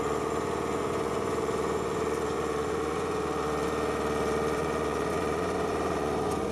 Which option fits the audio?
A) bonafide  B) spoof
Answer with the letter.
B